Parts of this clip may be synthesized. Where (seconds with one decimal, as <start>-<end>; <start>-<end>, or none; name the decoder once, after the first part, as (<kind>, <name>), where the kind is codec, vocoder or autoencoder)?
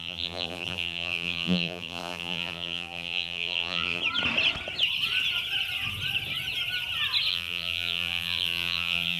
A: 0.0-4.0 (vocoder, BigVGAN v2); 7.3-9.2